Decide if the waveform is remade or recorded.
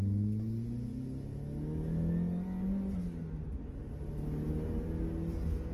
recorded